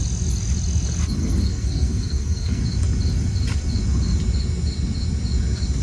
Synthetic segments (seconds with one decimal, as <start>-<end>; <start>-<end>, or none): 1.2-2.6